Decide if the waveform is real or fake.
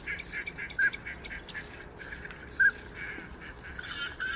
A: real